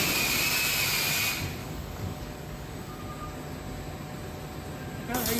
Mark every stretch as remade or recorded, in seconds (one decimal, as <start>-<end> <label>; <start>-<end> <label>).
0.0-1.6 recorded; 1.6-3.0 remade; 3.0-5.4 recorded